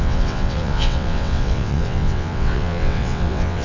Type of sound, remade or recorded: remade